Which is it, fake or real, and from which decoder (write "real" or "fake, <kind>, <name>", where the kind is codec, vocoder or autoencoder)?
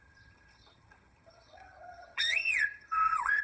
fake, vocoder, HiFi-GAN